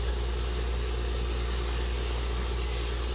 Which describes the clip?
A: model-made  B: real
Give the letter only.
B